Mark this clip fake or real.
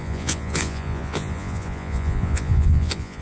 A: fake